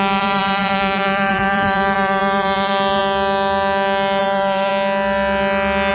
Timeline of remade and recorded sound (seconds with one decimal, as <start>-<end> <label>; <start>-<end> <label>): 0.0-3.0 remade; 3.0-4.2 recorded; 4.2-4.7 remade; 4.7-5.9 recorded

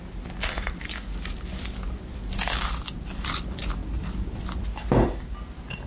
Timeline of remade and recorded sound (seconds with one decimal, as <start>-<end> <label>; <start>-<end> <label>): 0.0-3.8 recorded; 3.8-4.5 remade; 4.5-5.9 recorded

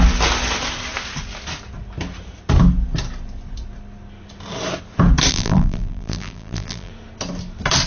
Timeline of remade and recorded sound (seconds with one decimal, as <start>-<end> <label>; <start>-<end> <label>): 0.0-5.3 recorded; 5.3-6.9 remade; 6.9-7.9 recorded